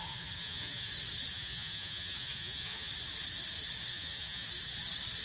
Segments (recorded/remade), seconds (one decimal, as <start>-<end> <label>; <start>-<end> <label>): 0.0-0.9 remade; 0.9-1.3 recorded; 1.3-2.9 remade; 2.9-3.9 recorded; 3.9-4.5 remade; 4.5-5.2 recorded